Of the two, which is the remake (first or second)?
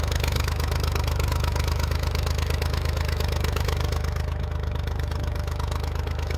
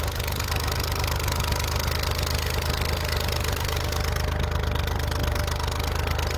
first